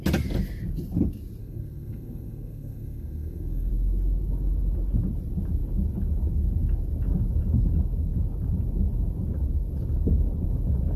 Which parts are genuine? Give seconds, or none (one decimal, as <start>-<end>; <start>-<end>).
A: 0.0-1.4; 3.7-11.0